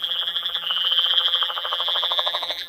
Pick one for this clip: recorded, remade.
remade